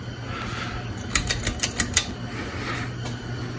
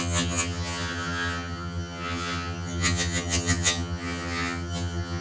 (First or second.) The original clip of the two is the first